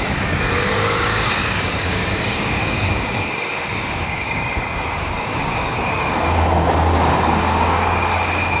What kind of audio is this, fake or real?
fake